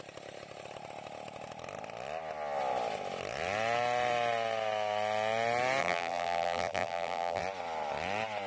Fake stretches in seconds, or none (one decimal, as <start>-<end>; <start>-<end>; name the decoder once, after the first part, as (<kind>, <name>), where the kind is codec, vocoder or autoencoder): 5.8-7.4 (vocoder, BigVGAN v2)